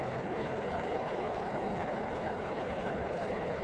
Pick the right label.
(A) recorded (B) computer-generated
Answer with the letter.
B